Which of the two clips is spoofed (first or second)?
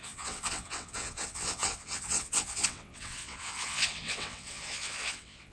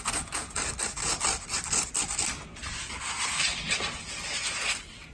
first